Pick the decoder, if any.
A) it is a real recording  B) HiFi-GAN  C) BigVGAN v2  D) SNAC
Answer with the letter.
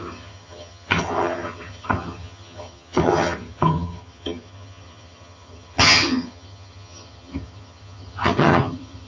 B